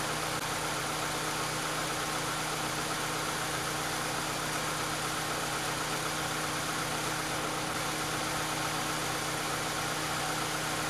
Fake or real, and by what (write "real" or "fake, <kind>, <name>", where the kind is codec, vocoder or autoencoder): real